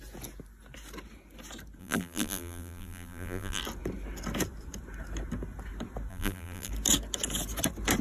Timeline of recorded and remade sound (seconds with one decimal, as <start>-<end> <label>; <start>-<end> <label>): 0.0-1.8 recorded; 1.8-3.6 remade; 3.6-6.1 recorded; 6.1-6.7 remade; 6.7-8.0 recorded